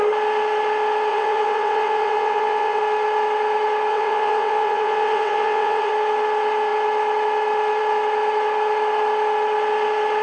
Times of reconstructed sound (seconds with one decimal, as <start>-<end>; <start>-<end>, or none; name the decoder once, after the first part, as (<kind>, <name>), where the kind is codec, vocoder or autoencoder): 1.1-2.8 (vocoder, WaveNeXt); 3.9-5.9